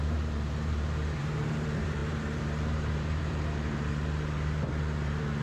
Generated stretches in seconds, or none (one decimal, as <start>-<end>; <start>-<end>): 0.0-5.4